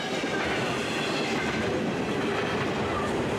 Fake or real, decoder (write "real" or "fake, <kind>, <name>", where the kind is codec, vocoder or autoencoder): real